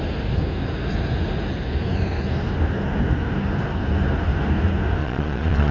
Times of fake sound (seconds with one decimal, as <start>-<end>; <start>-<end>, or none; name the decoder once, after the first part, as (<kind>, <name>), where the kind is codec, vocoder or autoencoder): 5.0-5.7 (vocoder, Vocos)